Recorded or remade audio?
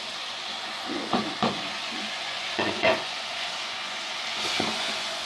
remade